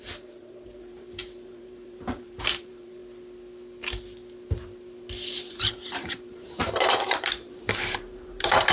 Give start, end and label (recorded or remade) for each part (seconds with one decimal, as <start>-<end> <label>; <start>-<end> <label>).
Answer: 0.0-3.0 remade; 3.0-5.5 recorded; 5.5-8.7 remade